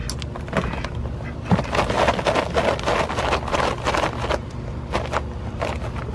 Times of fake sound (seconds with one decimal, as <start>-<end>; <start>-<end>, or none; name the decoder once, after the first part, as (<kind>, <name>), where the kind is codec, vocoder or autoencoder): none